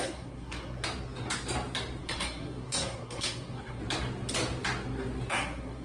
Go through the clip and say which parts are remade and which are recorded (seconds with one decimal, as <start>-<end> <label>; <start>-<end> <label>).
0.0-0.8 remade; 0.8-2.0 recorded; 2.0-3.8 remade; 3.8-5.3 recorded; 5.3-5.8 remade